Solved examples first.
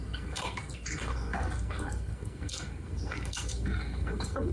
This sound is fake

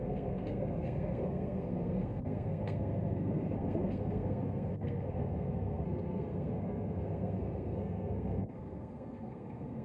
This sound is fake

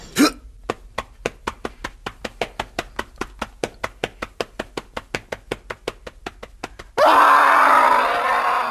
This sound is real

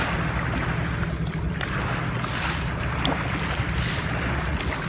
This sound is real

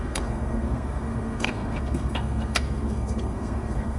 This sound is fake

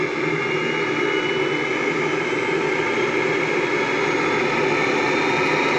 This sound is real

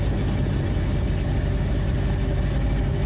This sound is real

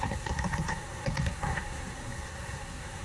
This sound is fake